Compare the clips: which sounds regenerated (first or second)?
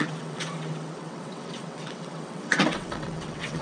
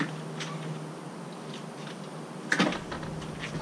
first